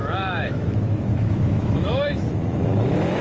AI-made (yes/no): yes